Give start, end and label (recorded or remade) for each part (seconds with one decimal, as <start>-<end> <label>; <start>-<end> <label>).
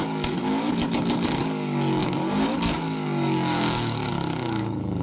0.0-5.0 remade